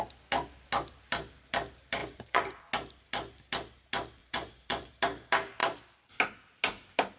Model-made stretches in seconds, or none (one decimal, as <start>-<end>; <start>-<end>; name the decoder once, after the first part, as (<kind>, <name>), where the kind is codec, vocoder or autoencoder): 2.0-2.6 (vocoder, Vocos); 4.2-4.9